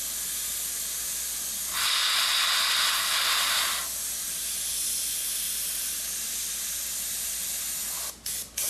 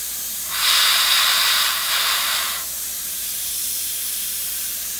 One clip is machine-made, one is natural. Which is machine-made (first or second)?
second